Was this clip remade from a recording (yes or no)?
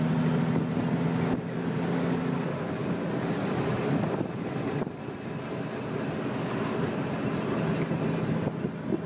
no